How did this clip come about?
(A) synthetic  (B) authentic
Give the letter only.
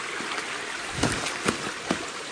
B